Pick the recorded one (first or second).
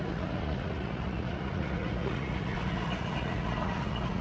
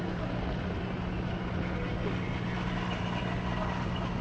second